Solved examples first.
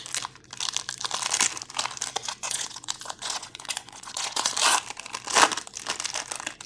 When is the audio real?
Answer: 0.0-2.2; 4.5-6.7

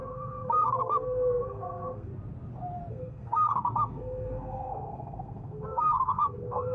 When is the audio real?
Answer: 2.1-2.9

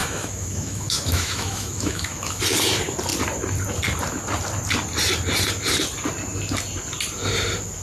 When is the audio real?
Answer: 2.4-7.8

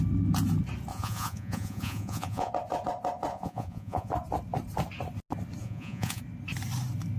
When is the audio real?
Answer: 0.0-0.9; 2.5-3.3; 4.1-5.6; 6.2-7.2